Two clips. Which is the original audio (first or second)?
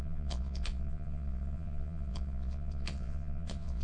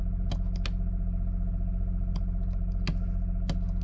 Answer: second